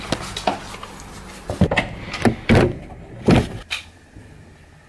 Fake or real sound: real